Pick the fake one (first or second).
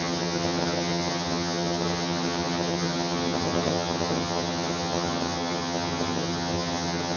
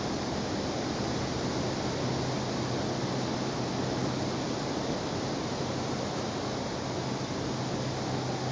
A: first